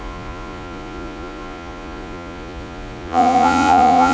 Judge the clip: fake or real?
fake